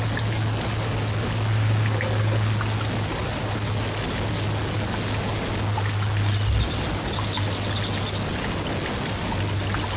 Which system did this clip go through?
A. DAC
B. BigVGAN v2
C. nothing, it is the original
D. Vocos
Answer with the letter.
C